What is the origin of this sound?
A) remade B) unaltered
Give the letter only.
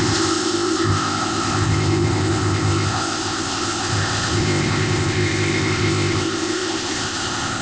A